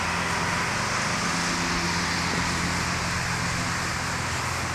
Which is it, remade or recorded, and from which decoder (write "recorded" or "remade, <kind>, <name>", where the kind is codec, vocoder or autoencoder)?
recorded